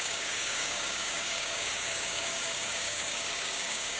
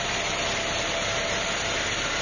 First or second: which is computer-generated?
first